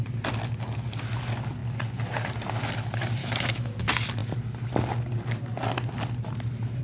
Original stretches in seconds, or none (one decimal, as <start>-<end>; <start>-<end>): 0.0-3.2; 3.8-6.8